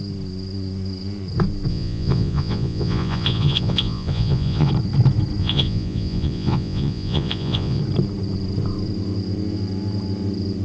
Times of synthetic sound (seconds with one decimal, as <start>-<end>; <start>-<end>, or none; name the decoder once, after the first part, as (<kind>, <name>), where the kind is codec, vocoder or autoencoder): 1.7-4.7 (vocoder, Vocos); 5.4-7.8